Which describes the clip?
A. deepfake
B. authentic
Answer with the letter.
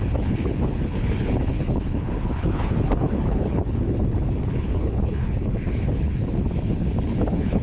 A